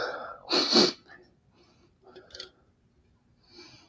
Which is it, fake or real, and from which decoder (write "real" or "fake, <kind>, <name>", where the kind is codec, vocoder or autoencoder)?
real